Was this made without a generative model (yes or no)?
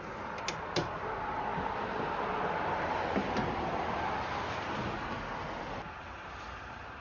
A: yes